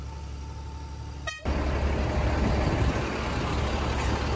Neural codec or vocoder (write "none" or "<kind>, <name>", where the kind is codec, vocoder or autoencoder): none